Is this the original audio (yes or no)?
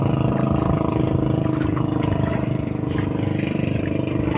yes